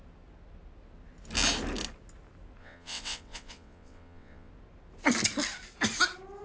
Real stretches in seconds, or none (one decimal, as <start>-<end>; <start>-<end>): 0.0-2.6; 4.5-6.4